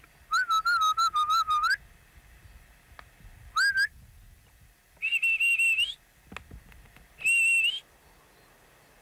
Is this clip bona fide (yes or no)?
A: yes